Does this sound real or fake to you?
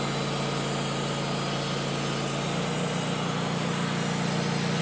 real